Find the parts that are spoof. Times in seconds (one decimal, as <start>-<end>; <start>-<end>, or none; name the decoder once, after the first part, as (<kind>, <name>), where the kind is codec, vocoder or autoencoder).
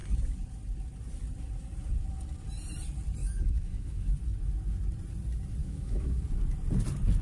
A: 3.2-4.1 (autoencoder, DAC-VAE); 5.6-6.2